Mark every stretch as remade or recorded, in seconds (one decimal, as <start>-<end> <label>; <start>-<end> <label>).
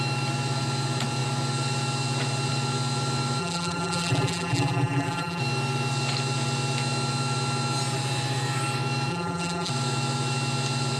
0.0-3.4 recorded; 3.4-5.4 remade; 5.4-9.1 recorded; 9.1-9.7 remade; 9.7-11.0 recorded